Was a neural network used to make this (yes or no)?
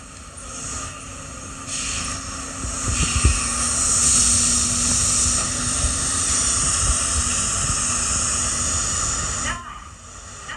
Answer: no